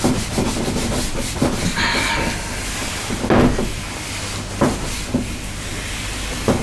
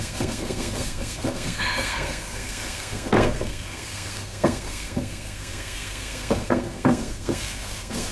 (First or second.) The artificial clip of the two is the second